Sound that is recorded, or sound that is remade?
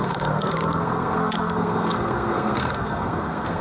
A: remade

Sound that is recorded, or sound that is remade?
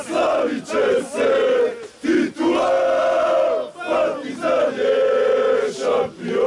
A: recorded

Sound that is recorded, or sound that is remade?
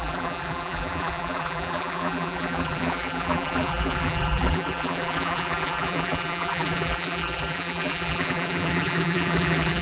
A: remade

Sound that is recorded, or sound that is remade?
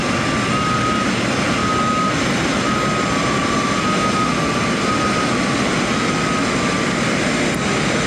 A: recorded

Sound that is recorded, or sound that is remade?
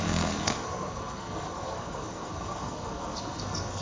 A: remade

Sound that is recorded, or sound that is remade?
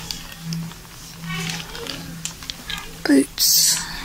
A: recorded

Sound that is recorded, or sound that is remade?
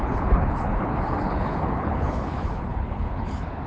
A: remade